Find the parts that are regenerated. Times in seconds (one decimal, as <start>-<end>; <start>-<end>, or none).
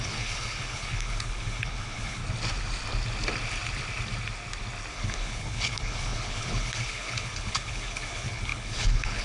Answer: 0.0-2.2; 4.9-9.2